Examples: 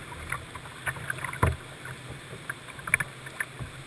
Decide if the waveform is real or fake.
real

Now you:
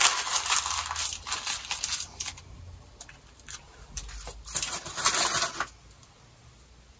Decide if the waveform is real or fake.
real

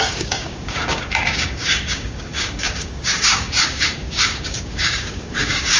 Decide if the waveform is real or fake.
fake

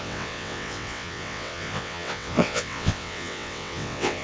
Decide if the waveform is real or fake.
fake